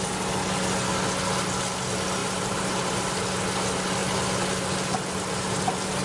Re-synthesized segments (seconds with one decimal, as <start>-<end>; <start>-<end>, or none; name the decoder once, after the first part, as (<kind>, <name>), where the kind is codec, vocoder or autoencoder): 2.2-3.1 (vocoder, BigVGAN v2)